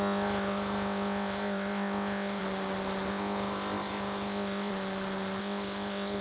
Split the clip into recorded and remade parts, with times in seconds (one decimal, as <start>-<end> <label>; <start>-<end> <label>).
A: 0.0-2.4 remade; 2.4-3.1 recorded; 3.1-4.7 remade; 4.7-5.4 recorded; 5.4-6.2 remade